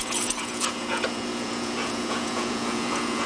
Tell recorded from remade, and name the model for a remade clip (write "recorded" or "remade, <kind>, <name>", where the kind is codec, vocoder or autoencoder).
remade, vocoder, Vocos